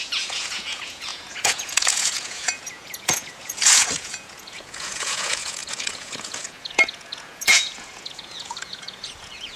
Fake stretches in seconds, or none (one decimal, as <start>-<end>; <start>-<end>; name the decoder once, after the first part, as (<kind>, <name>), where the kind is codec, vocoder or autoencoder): 0.0-9.6 (vocoder, Vocos)